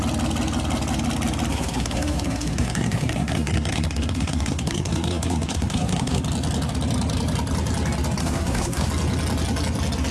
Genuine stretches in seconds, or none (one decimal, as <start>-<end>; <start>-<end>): 0.0-1.5; 6.2-8.2; 8.9-10.1